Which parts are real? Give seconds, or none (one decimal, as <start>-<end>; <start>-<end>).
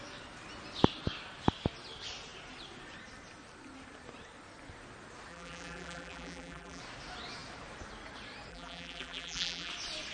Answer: 0.0-5.3; 6.8-8.5; 9.7-10.1